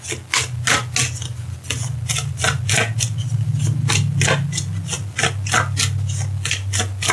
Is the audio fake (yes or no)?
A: no